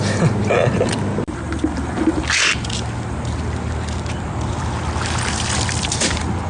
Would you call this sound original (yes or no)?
yes